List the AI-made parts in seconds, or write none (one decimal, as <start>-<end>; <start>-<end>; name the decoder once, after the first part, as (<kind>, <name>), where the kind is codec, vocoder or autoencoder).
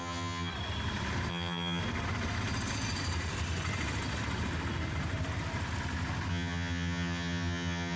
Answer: 0.0-0.5 (vocoder, HiFi-GAN); 1.3-1.8; 6.3-8.0